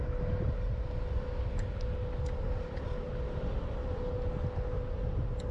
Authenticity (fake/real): real